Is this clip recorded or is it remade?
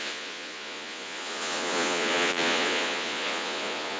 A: remade